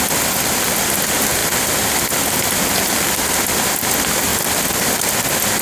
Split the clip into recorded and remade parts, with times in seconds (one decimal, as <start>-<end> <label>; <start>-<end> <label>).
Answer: 0.0-1.4 recorded; 1.4-2.8 remade; 2.8-4.3 recorded; 4.3-5.1 remade; 5.1-5.6 recorded